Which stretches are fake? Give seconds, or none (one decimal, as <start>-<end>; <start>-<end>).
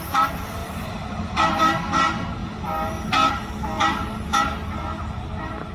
0.6-1.1